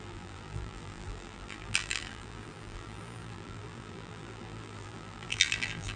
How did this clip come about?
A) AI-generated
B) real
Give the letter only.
A